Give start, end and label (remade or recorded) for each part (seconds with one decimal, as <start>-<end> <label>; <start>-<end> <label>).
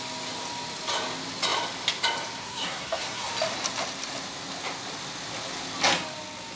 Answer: 0.0-2.4 recorded; 2.4-3.3 remade; 3.3-6.6 recorded